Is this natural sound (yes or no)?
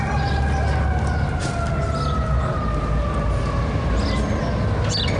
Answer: yes